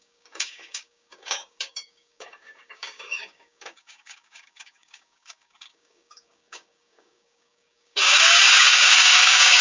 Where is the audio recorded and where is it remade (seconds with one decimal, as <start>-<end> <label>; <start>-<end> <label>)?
0.0-9.6 remade